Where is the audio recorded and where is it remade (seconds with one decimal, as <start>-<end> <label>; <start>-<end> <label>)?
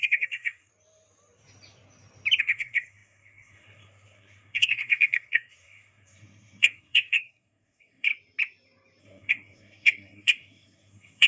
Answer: 0.0-0.7 remade; 0.7-2.4 recorded; 2.4-8.1 remade; 8.1-9.0 recorded; 9.0-11.3 remade